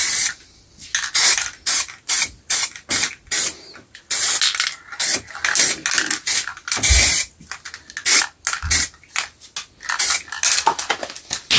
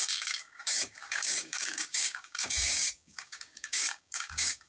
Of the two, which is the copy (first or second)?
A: second